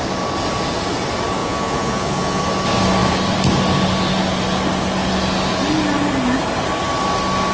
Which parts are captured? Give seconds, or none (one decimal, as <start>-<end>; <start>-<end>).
0.0-1.4; 2.4-7.5